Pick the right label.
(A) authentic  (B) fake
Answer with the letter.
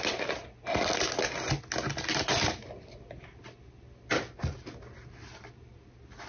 A